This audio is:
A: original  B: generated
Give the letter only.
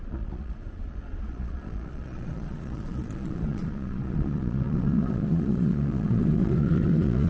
B